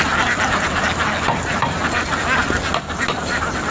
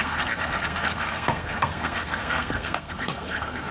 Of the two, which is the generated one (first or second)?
second